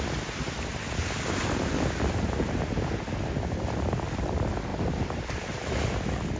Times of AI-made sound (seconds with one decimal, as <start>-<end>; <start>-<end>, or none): 4.7-5.8

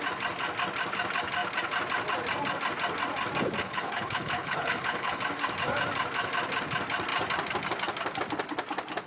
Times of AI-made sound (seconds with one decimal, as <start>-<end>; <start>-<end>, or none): 3.6-5.2

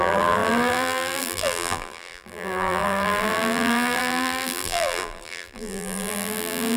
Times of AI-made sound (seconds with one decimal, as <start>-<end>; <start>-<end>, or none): 0.0-6.8

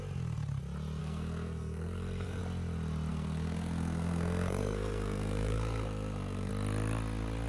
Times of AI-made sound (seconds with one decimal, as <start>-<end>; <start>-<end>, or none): 1.0-2.4; 3.1-6.5